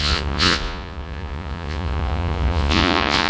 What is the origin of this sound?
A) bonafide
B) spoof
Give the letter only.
B